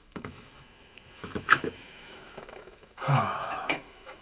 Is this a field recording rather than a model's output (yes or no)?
no